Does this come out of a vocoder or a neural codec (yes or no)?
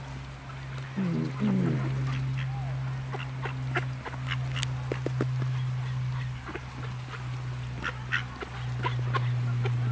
no